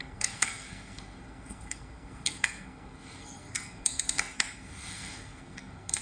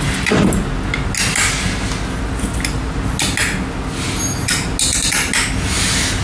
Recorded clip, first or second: second